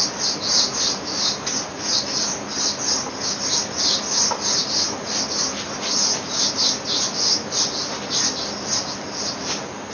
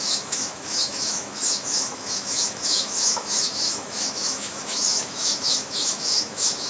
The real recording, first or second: first